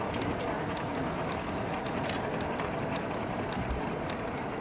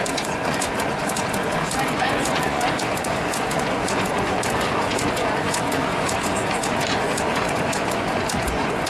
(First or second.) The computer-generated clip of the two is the second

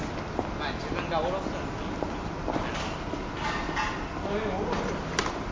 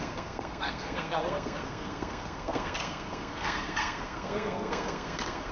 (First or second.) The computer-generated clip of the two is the second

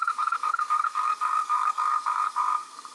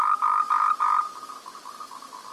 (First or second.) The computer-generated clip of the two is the first